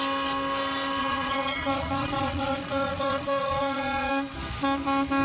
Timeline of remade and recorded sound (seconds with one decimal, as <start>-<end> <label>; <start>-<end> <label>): 0.0-1.0 recorded; 1.0-4.1 remade; 4.1-5.2 recorded